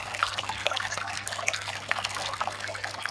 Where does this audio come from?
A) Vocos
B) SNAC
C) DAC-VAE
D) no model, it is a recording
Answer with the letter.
B